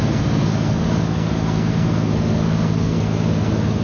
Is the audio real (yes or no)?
no